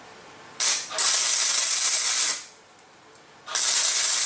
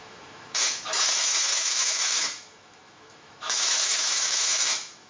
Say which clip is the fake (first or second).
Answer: second